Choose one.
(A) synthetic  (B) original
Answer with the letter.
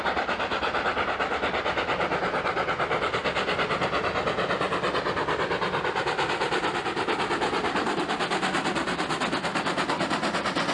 B